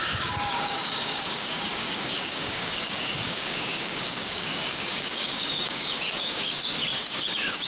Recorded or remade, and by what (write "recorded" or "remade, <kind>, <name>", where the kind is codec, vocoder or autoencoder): remade, codec, DAC